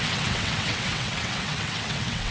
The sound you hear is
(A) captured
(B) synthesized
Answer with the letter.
B